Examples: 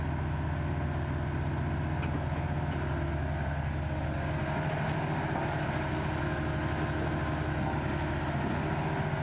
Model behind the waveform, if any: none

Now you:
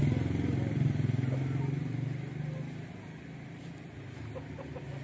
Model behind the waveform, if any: none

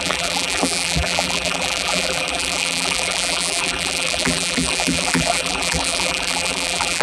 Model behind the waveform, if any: vocoder, BigVGAN v2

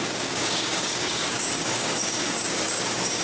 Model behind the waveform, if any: codec, DAC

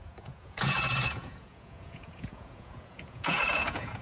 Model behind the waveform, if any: vocoder, Vocos